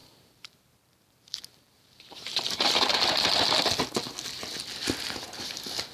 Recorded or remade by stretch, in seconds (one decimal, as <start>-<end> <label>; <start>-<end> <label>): 0.0-3.5 remade; 3.5-5.9 recorded